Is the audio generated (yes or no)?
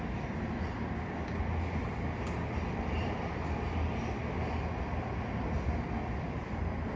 no